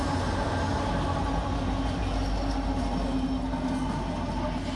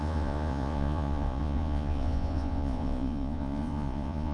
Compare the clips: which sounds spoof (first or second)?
second